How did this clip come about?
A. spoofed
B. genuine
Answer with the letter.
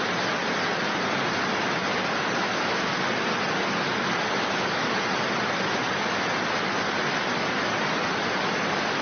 B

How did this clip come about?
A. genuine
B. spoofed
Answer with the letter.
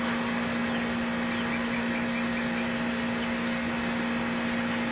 A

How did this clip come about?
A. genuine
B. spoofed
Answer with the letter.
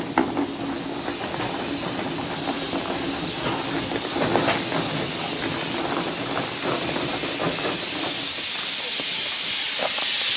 A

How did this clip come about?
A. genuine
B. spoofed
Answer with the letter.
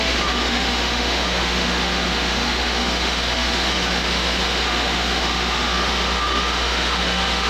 B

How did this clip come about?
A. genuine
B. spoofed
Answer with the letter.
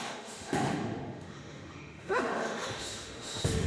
B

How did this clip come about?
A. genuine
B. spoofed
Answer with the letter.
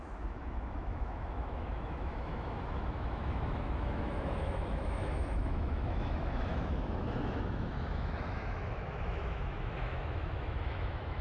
B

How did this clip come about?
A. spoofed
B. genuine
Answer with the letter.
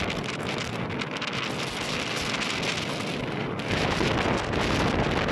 B